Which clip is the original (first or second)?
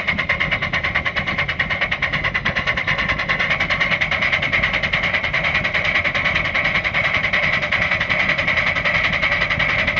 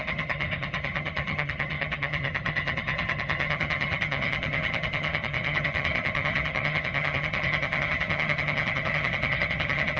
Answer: first